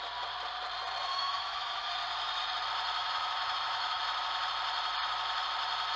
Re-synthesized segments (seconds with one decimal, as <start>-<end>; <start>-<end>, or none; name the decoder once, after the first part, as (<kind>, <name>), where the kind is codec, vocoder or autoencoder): 1.1-1.9 (autoencoder, DAC-VAE); 3.0-4.0